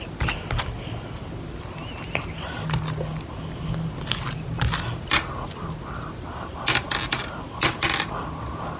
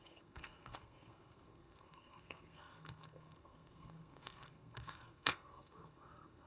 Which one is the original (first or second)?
first